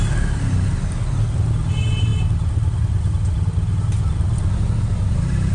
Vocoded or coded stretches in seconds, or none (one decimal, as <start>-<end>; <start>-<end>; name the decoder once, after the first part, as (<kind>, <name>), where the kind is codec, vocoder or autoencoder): none